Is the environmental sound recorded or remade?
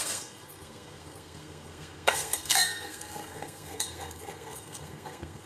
remade